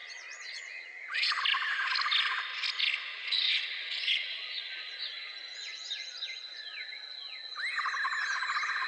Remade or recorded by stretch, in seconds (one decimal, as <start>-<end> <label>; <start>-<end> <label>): 0.0-1.4 remade; 1.4-3.1 recorded; 3.1-5.2 remade; 5.2-8.9 recorded